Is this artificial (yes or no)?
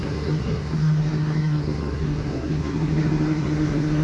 yes